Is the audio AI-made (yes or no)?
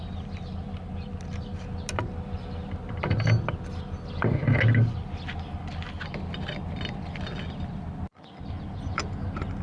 no